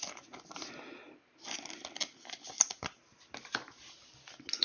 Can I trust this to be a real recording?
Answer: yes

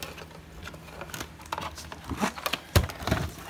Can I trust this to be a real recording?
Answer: yes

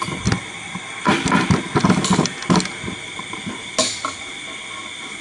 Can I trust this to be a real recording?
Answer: yes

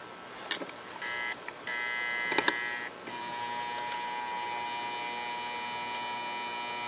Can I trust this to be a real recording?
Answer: yes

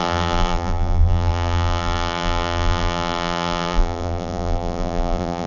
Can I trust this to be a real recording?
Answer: no